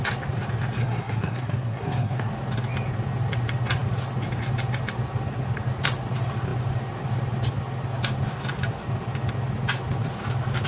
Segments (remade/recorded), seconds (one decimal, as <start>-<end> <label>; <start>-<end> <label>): 0.0-0.8 recorded; 0.8-2.3 remade; 2.3-10.7 recorded